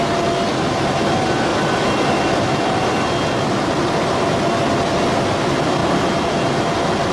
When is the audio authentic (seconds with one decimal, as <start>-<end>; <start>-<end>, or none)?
0.0-7.1